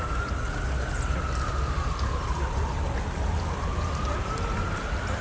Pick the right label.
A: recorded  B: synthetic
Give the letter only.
A